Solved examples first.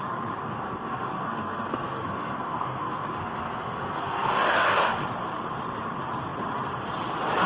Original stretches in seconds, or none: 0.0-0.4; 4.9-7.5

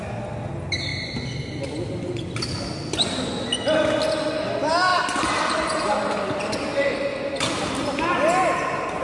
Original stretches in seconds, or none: 0.0-9.0

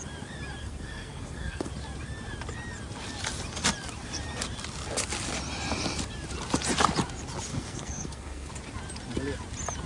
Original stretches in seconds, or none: 0.0-0.6; 1.7-7.5; 8.5-9.9

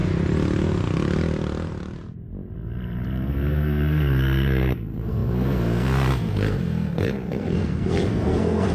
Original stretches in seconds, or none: 0.0-3.3

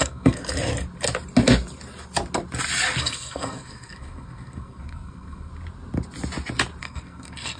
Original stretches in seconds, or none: 0.4-3.0; 5.5-6.8